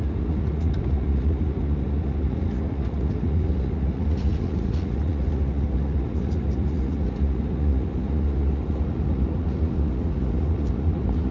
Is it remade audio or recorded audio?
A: remade